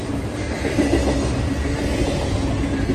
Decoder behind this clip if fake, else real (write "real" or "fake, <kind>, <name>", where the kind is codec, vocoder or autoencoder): real